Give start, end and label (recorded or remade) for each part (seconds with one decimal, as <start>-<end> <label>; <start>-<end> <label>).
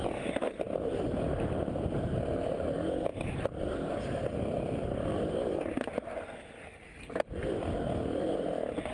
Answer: 0.0-8.9 recorded